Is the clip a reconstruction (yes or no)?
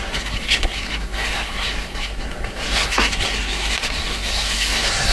yes